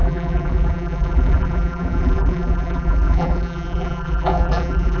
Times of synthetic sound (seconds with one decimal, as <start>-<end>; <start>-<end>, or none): 0.0-5.0